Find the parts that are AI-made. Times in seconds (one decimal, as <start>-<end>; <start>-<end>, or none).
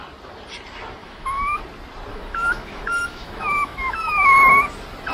1.0-1.6; 2.1-4.3